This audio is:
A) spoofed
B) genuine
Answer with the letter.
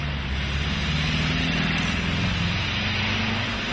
B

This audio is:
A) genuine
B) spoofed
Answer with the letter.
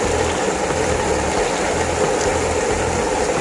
A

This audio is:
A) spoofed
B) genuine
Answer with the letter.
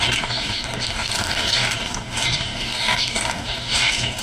A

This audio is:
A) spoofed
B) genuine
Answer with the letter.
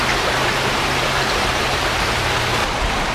A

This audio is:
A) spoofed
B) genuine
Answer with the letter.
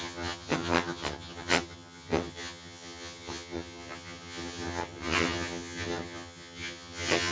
A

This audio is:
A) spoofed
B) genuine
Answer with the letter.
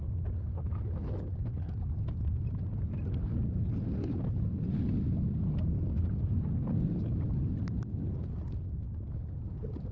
B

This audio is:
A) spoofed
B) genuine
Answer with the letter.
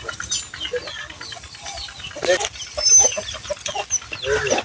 B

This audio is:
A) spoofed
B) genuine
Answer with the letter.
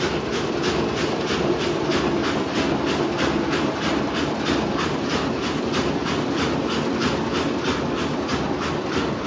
B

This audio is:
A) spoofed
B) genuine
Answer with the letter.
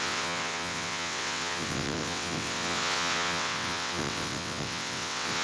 A